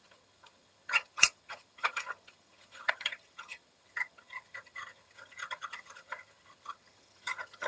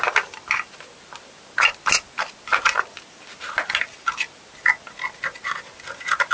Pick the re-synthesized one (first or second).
first